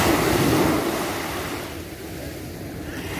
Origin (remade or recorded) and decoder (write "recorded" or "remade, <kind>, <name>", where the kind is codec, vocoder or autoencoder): recorded